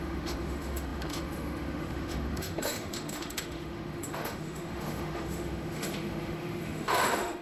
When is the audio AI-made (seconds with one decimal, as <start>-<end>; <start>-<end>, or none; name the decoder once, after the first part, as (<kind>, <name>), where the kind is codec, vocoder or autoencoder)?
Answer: 0.0-7.4 (autoencoder, DAC-VAE)